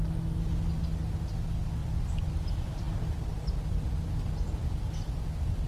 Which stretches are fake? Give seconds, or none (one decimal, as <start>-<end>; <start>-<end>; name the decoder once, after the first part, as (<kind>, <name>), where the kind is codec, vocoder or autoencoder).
1.8-4.1 (vocoder, BigVGAN v2)